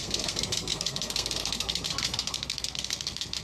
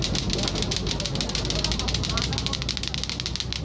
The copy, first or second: first